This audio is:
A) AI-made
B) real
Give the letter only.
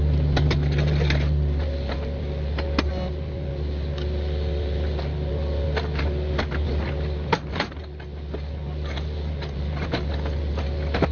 B